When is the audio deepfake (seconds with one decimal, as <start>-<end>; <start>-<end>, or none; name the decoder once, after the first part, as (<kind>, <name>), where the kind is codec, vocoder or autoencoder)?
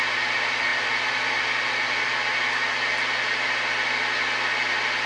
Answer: none